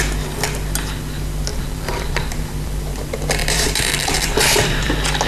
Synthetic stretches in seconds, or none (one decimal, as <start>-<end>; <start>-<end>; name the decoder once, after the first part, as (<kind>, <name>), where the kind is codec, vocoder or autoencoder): 1.5-2.4 (vocoder, BigVGAN v2); 3.4-4.8